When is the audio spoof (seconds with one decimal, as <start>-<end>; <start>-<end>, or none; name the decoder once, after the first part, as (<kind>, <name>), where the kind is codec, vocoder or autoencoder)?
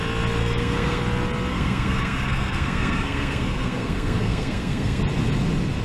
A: 0.4-1.0 (codec, SNAC); 1.5-5.0